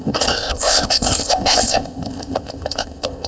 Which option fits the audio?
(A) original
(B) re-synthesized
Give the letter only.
B